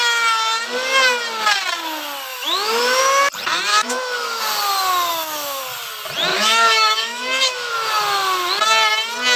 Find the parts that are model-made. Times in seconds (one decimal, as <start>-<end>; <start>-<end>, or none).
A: 2.3-3.0; 3.7-4.4; 5.1-5.6; 6.3-7.7